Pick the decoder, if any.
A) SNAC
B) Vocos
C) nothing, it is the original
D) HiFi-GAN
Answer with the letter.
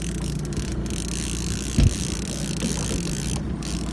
C